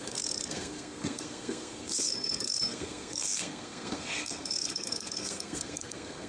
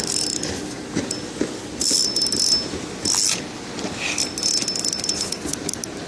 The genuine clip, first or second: second